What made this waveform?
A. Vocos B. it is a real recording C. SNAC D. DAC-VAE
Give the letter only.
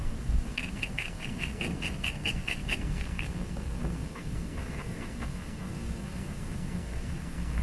C